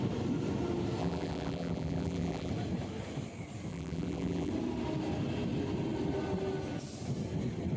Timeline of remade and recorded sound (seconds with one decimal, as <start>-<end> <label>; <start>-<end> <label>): 0.0-1.0 recorded; 1.0-2.5 remade; 2.5-3.7 recorded; 3.7-4.5 remade; 4.5-7.8 recorded